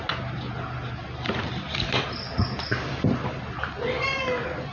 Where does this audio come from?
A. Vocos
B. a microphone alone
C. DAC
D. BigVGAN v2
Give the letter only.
B